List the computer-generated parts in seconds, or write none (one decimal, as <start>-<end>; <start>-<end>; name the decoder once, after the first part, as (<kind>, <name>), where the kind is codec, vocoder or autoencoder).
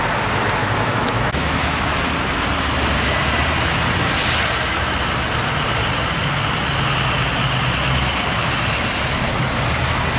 0.6-1.9 (autoencoder, DAC-VAE)